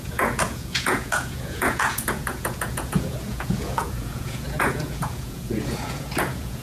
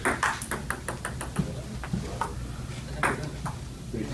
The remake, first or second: first